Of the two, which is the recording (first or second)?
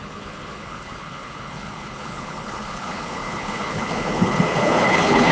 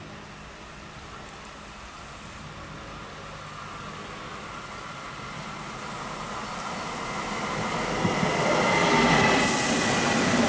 second